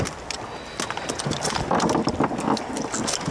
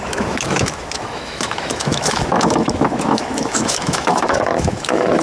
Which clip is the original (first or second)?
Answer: first